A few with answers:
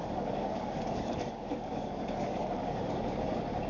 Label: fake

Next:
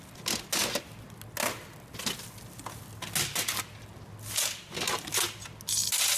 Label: real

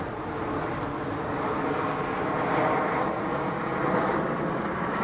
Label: real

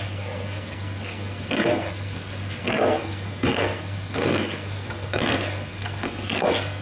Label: fake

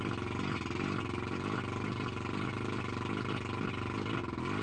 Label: real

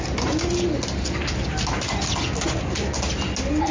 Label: real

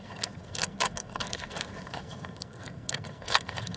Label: fake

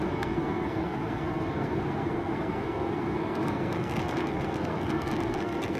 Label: fake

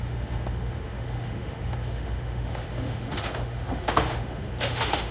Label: fake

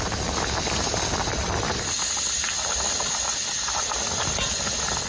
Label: real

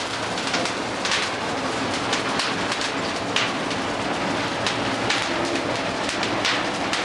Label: real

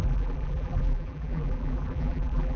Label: fake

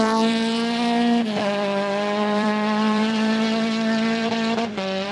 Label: fake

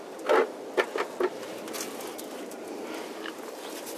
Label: real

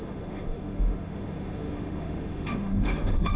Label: fake